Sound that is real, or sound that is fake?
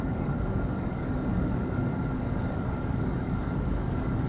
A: fake